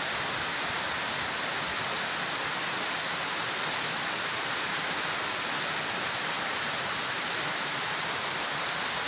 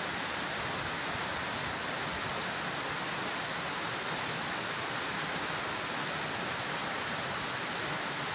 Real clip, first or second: second